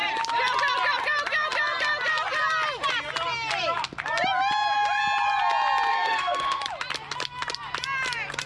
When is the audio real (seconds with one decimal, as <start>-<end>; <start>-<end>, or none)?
0.0-5.9; 6.6-8.5